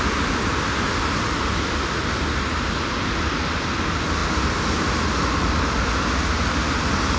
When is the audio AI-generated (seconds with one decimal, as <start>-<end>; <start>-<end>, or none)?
none